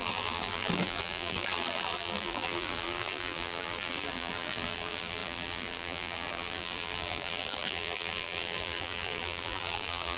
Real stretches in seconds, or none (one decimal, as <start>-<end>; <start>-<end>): none